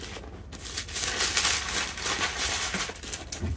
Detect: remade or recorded recorded